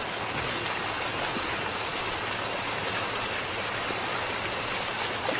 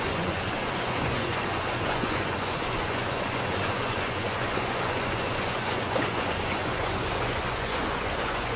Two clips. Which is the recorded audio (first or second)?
first